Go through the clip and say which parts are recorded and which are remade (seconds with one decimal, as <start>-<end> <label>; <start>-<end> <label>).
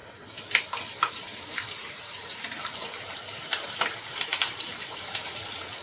0.0-1.1 recorded; 1.1-5.8 remade